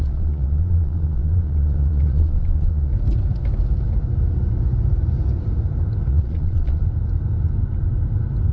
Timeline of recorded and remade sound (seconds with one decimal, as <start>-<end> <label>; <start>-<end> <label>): 0.0-2.9 remade; 2.9-6.1 recorded; 6.1-6.8 remade; 6.8-8.5 recorded